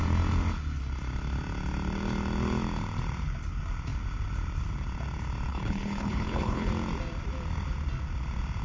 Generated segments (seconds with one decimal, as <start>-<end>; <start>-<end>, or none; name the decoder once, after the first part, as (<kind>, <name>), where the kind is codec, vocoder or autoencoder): 5.5-6.7 (codec, HILCodec)